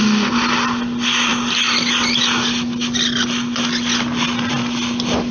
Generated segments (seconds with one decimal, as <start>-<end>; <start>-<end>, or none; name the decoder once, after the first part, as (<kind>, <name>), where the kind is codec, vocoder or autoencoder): none